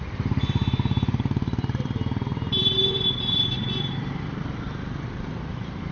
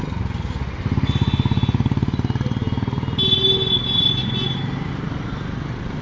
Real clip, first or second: second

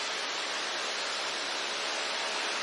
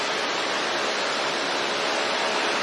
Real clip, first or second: second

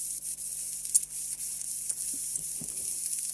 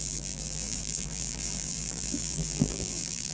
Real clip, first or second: first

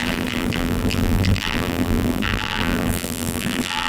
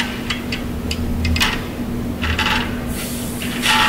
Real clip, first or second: second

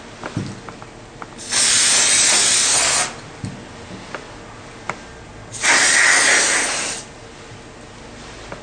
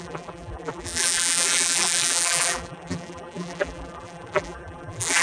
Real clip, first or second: first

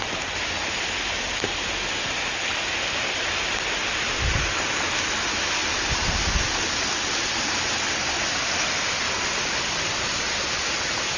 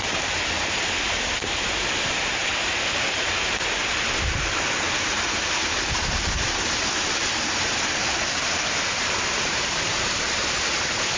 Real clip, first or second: first